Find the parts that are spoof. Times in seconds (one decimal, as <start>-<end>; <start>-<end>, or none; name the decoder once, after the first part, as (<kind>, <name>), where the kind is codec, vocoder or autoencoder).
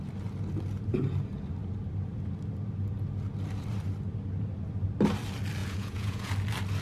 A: 5.6-6.3 (vocoder, Vocos)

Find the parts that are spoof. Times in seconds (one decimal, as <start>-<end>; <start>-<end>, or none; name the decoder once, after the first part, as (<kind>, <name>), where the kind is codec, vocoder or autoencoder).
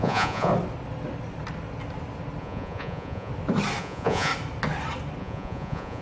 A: 0.0-0.5 (vocoder, Vocos); 2.4-3.3; 3.8-4.3; 5.2-6.0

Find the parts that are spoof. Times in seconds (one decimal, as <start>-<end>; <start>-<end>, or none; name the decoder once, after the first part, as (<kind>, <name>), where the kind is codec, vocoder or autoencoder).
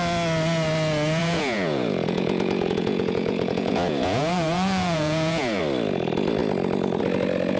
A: 1.2-5.6 (vocoder, Vocos)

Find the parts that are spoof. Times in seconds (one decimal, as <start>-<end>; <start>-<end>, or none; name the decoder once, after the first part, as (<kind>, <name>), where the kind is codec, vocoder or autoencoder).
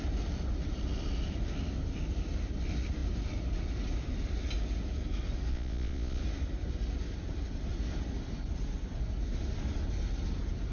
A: 5.5-6.2 (vocoder, Vocos)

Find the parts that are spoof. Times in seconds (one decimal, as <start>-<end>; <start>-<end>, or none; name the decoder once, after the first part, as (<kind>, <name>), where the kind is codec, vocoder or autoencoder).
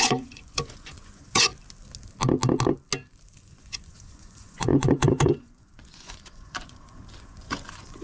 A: 0.0-1.5 (vocoder, Vocos); 3.4-8.0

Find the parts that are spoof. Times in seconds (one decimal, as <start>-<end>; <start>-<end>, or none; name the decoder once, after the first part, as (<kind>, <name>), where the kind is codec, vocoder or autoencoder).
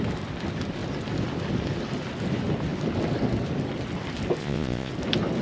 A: 4.4-4.9 (vocoder, Vocos)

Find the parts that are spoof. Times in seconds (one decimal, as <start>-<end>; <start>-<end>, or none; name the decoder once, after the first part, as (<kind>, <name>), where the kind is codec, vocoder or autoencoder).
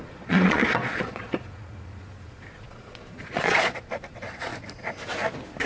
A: 0.0-4.5 (vocoder, Vocos)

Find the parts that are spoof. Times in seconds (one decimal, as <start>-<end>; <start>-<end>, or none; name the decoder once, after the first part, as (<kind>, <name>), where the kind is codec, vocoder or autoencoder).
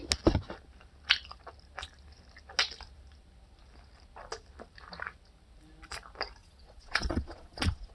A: 6.4-7.9 (vocoder, Vocos)